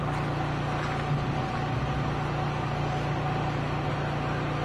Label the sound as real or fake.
real